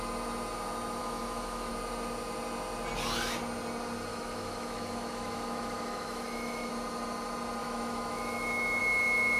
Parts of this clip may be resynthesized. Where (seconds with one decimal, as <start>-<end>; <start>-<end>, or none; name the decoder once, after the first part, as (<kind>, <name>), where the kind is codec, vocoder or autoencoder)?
1.0-1.7 (autoencoder, DAC-VAE); 4.1-6.7; 7.6-8.8